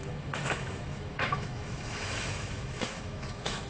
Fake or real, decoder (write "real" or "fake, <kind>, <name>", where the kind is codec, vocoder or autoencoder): fake, autoencoder, DAC-VAE